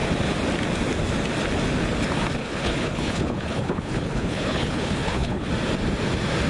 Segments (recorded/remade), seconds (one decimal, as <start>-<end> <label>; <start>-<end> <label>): 0.0-2.4 recorded; 2.4-5.5 remade; 5.5-6.5 recorded